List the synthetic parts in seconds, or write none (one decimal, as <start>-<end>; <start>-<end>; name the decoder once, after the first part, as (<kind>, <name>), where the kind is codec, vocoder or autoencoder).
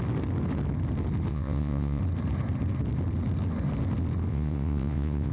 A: 1.3-2.0 (vocoder, WaveNeXt); 4.3-5.3